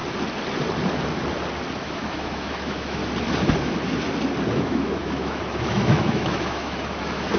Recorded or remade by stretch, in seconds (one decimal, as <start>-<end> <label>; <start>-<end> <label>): 0.0-1.8 recorded; 1.8-3.0 remade; 3.0-4.5 recorded; 4.5-7.4 remade